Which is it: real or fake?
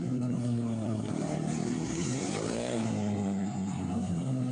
fake